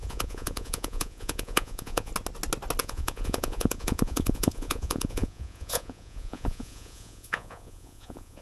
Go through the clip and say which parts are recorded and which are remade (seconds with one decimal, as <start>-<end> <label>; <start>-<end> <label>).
0.0-2.1 remade; 2.1-2.8 recorded; 2.8-8.4 remade